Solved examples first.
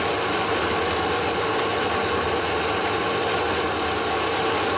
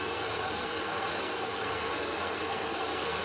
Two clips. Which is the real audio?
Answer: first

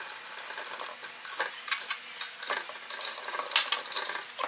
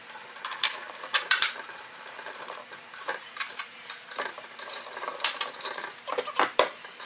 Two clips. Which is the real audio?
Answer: first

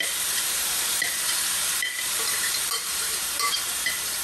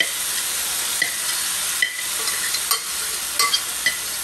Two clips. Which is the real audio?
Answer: second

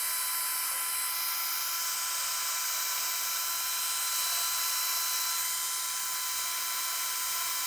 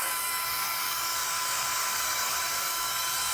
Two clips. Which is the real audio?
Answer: first